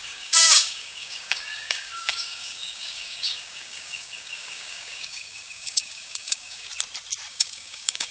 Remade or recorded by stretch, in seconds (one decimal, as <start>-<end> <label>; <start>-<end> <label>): 0.0-6.7 remade; 6.7-7.3 recorded; 7.3-8.1 remade